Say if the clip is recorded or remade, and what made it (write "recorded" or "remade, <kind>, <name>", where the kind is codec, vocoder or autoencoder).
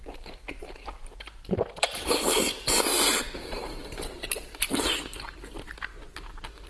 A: remade, vocoder, BigVGAN v2